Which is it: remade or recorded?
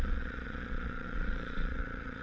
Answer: remade